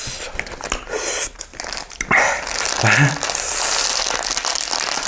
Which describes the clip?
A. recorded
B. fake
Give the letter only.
A